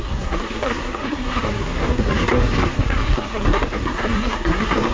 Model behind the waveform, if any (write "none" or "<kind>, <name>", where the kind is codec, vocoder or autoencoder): codec, SNAC